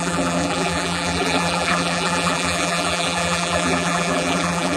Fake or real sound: fake